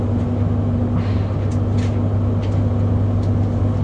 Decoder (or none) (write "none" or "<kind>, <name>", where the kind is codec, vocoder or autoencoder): none